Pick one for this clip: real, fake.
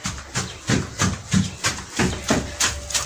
real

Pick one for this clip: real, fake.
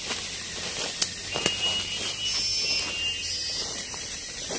real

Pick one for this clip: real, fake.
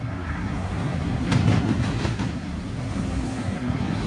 fake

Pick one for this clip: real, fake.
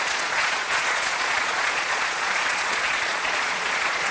fake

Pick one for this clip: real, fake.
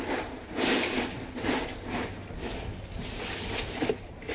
real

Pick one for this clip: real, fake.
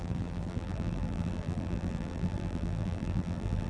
fake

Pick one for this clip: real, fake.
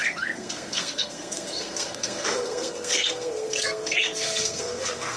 fake